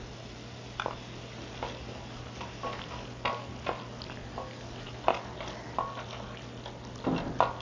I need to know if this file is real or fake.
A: real